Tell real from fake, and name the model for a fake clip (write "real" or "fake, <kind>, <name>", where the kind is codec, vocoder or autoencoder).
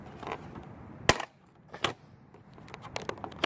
real